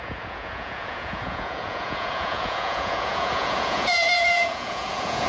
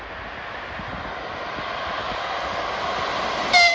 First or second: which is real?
second